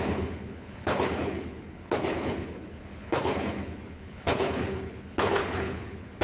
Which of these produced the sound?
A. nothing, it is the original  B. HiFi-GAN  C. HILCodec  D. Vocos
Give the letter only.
C